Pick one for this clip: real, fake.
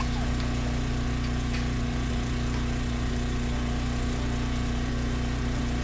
real